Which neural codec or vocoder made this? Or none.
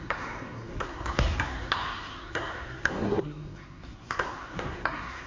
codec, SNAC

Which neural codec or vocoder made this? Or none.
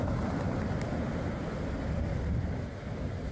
none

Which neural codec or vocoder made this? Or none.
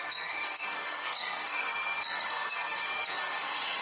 codec, SNAC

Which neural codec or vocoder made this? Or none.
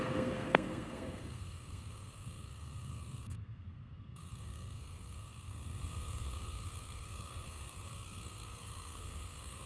codec, SNAC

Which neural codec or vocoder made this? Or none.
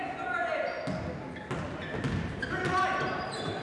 none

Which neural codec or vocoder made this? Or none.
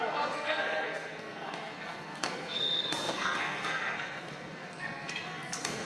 codec, SNAC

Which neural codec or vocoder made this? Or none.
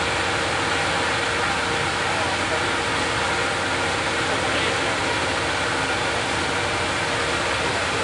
none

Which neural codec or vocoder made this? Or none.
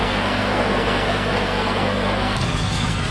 codec, SNAC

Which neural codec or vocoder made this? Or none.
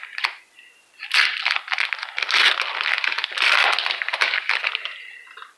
none